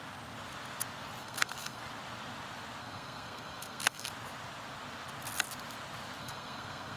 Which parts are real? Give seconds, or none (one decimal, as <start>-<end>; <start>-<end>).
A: 0.0-1.2; 1.8-2.8; 4.1-6.2